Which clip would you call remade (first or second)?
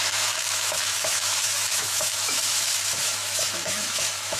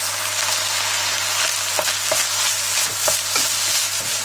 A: first